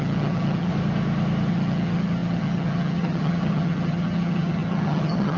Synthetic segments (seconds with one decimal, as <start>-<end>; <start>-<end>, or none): 0.0-0.7; 1.5-5.4